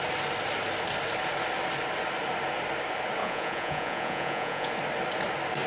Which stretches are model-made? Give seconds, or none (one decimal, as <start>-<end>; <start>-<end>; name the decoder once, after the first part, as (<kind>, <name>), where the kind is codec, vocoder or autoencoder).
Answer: 3.2-4.7 (vocoder, Vocos)